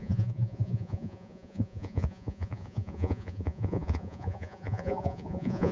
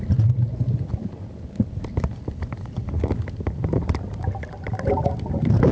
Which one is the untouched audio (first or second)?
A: second